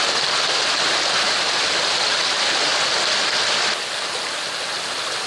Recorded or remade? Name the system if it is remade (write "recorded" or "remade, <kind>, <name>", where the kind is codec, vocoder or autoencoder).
recorded